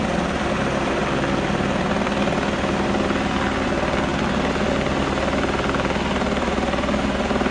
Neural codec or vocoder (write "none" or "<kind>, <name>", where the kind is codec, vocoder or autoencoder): none